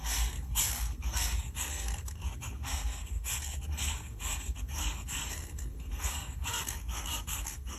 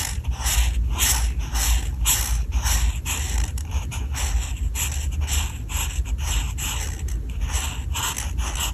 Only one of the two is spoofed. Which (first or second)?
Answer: first